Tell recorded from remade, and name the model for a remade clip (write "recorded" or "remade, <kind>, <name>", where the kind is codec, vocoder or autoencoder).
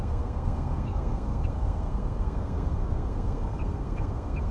remade, codec, SNAC